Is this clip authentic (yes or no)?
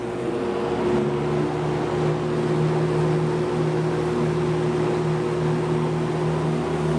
yes